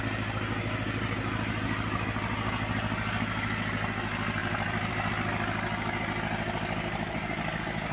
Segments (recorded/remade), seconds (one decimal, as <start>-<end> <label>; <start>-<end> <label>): 0.0-4.4 recorded; 4.4-5.1 remade; 5.1-7.9 recorded